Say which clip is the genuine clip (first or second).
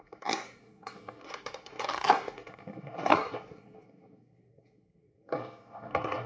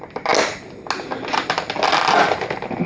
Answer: second